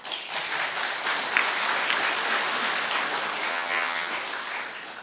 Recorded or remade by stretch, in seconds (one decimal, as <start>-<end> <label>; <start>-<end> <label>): 0.0-3.5 recorded; 3.5-4.1 remade; 4.1-5.0 recorded